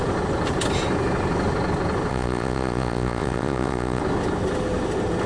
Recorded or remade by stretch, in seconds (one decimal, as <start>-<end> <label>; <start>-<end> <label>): 0.0-2.1 recorded; 2.1-4.0 remade; 4.0-5.3 recorded